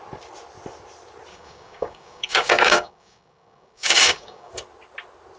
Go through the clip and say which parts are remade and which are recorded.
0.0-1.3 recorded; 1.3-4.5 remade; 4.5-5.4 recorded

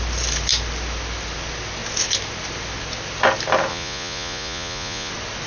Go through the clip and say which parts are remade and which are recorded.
0.0-3.7 recorded; 3.7-5.1 remade; 5.1-5.5 recorded

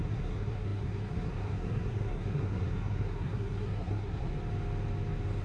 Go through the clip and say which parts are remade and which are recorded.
0.0-4.3 remade; 4.3-5.4 recorded

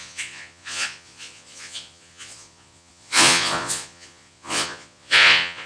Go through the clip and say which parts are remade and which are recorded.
0.0-5.7 remade

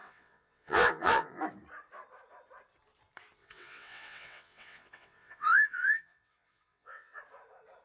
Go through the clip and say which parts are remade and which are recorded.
0.0-1.4 remade; 1.4-3.4 recorded; 3.4-7.2 remade; 7.2-7.8 recorded

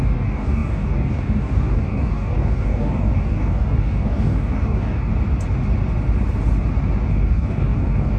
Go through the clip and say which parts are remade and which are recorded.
0.0-5.1 remade; 5.1-7.1 recorded; 7.1-8.2 remade

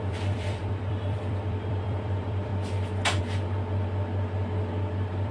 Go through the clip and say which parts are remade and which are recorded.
0.0-2.5 remade; 2.5-3.2 recorded; 3.2-5.3 remade